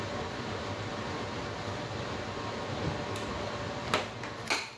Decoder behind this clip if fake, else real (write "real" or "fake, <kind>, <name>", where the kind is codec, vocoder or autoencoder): real